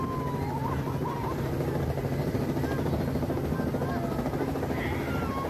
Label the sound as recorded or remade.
recorded